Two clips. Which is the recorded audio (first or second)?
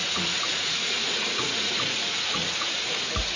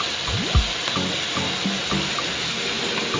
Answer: second